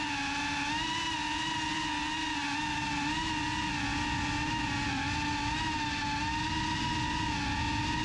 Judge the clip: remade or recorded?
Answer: recorded